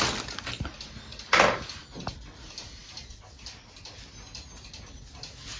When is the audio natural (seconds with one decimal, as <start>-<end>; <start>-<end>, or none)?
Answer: 0.0-5.6

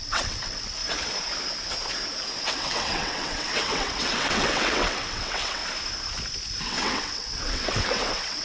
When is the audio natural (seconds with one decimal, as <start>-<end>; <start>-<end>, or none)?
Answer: 0.8-2.4; 5.6-6.6

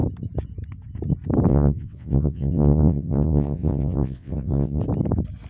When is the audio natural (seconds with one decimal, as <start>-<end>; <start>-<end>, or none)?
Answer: 0.0-1.5; 4.8-5.5

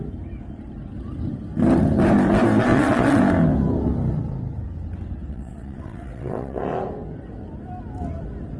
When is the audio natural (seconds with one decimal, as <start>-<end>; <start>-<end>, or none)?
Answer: 0.0-2.7; 3.2-5.3; 6.6-8.6

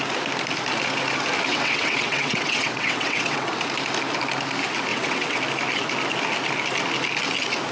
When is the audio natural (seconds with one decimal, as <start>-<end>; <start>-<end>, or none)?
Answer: 0.0-1.5; 3.5-4.9; 5.4-7.7